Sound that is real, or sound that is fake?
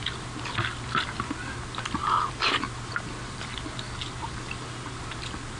real